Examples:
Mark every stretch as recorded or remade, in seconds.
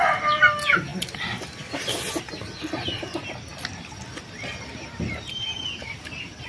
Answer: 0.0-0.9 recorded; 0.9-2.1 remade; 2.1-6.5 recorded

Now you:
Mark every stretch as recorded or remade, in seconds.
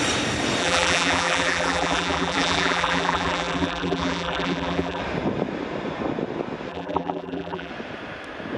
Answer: 0.0-0.6 recorded; 0.6-5.0 remade; 5.0-6.7 recorded; 6.7-7.7 remade; 7.7-8.6 recorded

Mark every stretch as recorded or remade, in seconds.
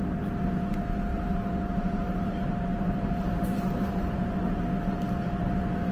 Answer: 0.0-1.1 recorded; 1.1-4.6 remade; 4.6-5.9 recorded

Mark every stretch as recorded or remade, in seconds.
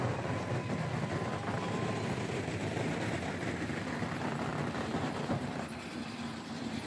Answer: 0.0-4.5 recorded; 4.5-5.5 remade; 5.5-6.9 recorded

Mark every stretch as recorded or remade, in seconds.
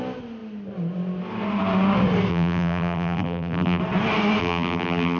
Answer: 0.0-2.3 recorded; 2.3-3.8 remade; 3.8-4.4 recorded; 4.4-5.2 remade